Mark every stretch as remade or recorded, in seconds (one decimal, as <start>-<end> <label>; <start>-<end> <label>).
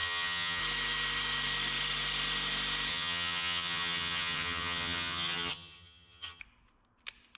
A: 0.0-0.6 remade; 0.6-2.9 recorded; 2.9-6.4 remade; 6.4-7.4 recorded